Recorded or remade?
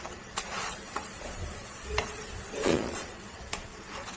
remade